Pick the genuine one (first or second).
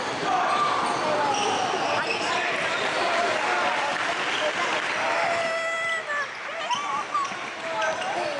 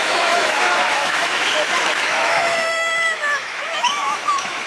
first